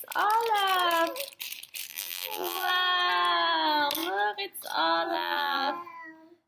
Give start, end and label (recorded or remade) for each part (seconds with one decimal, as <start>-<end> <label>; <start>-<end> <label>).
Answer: 0.0-1.9 recorded; 1.9-2.7 remade; 2.7-5.1 recorded; 5.1-5.7 remade; 5.7-6.5 recorded

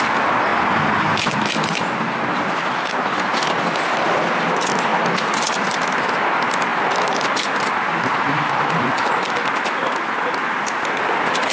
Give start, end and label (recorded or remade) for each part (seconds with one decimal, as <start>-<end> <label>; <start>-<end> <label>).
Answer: 0.0-4.9 recorded; 4.9-6.0 remade; 6.0-11.5 recorded

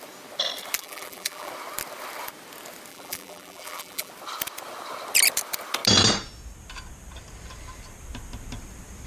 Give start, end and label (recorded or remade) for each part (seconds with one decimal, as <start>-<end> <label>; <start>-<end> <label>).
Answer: 0.0-0.8 recorded; 0.8-1.5 remade; 1.5-2.9 recorded; 2.9-4.1 remade; 4.1-9.1 recorded

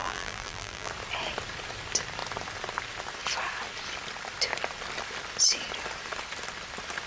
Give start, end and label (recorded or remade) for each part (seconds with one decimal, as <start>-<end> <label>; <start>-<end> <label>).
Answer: 0.0-0.9 remade; 0.9-7.1 recorded

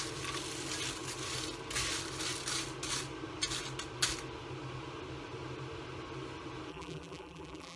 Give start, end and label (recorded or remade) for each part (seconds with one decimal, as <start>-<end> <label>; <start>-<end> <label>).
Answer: 0.0-6.7 recorded; 6.7-7.8 remade

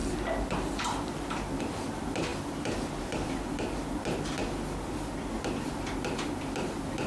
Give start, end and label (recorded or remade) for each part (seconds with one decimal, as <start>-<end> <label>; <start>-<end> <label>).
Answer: 0.0-4.4 remade; 4.4-5.3 recorded; 5.3-7.1 remade

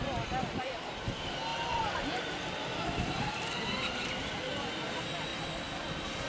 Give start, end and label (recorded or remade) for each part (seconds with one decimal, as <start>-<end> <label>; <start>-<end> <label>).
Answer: 0.0-1.5 recorded; 1.5-3.8 remade; 3.8-6.3 recorded